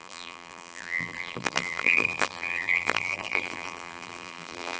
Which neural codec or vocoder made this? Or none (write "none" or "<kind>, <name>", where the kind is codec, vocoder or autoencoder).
vocoder, BigVGAN v2